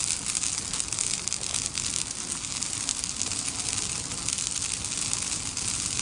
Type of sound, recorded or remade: recorded